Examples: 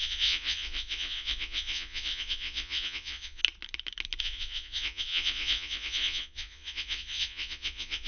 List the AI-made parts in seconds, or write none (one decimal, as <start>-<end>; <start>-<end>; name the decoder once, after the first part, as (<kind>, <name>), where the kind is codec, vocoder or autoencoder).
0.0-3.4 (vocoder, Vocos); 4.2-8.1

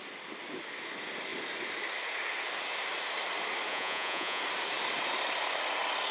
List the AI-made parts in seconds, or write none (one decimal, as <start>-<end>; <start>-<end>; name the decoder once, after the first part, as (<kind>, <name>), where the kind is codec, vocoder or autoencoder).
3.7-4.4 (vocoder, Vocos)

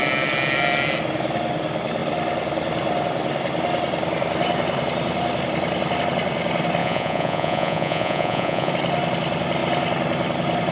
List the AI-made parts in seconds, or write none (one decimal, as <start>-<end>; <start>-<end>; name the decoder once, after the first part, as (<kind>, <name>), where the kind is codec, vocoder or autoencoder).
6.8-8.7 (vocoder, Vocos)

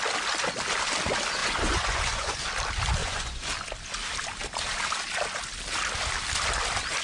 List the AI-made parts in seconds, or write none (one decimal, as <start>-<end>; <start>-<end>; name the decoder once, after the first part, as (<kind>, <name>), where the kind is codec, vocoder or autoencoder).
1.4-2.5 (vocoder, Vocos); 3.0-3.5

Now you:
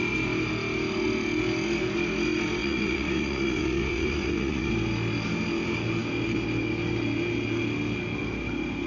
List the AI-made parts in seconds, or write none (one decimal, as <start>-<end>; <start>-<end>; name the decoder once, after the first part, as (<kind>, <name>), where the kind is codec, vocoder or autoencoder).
2.6-4.7 (vocoder, Vocos)